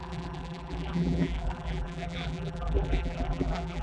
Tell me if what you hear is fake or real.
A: fake